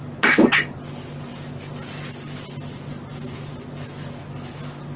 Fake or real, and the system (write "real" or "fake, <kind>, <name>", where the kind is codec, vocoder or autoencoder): real